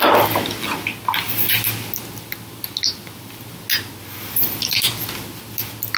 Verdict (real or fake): real